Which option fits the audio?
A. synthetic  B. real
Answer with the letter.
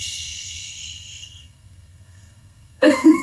A